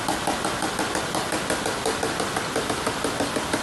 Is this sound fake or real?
real